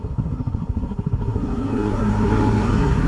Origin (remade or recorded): remade